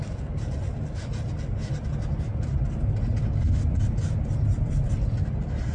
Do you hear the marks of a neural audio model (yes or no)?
no